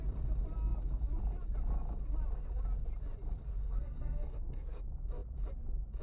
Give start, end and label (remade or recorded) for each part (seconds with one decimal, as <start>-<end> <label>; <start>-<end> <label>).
0.0-3.6 recorded; 3.6-4.8 remade; 4.8-6.0 recorded